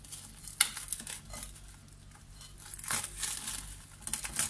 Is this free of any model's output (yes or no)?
yes